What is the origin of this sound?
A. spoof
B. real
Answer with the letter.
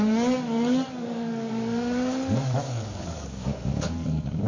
A